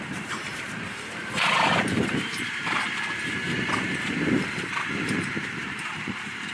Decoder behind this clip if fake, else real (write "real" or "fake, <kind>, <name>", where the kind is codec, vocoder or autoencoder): fake, vocoder, BigVGAN v2